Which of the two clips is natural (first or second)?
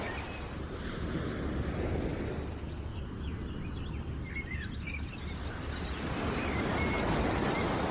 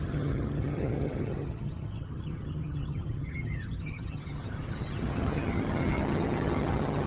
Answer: first